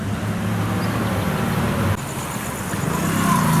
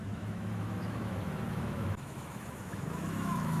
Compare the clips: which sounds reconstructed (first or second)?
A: second